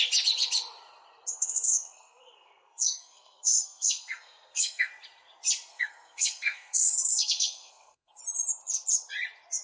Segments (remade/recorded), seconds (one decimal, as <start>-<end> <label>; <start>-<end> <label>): 0.0-1.3 recorded; 1.3-4.9 remade; 4.9-5.7 recorded; 5.7-8.2 remade; 8.2-9.6 recorded